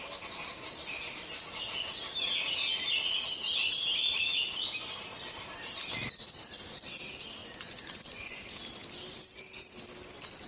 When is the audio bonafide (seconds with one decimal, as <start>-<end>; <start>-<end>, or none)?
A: 0.0-7.4; 8.4-10.5